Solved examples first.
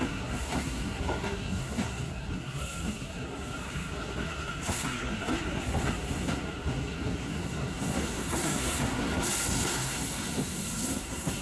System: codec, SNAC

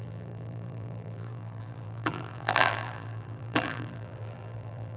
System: vocoder, BigVGAN v2